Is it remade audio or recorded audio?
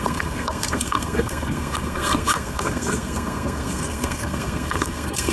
remade